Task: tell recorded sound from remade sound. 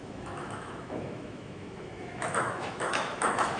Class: remade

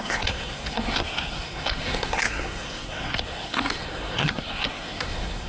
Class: remade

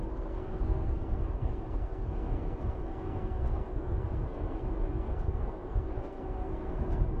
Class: remade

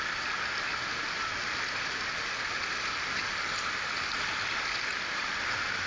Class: recorded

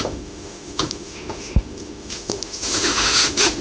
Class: remade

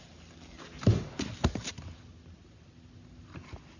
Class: recorded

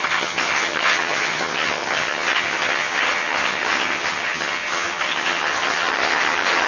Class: remade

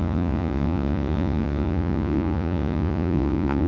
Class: remade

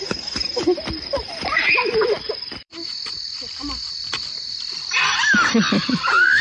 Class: remade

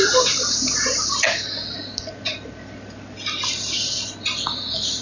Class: recorded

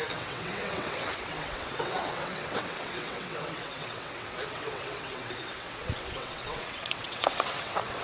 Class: remade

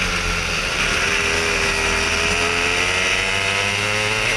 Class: recorded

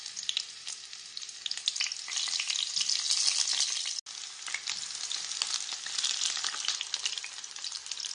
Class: recorded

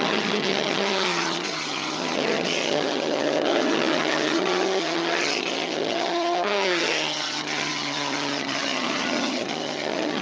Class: remade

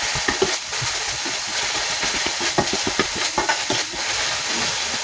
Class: recorded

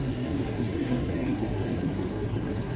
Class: remade